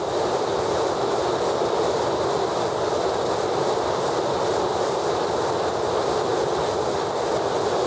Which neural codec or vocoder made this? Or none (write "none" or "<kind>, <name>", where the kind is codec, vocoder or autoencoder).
none